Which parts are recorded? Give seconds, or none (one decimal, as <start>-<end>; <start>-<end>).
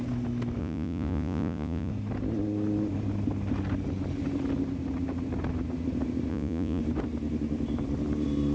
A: 0.0-0.6; 1.9-6.3; 6.8-8.5